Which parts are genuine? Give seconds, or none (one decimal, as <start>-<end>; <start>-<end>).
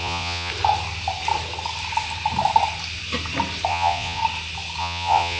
0.5-3.7; 4.2-4.8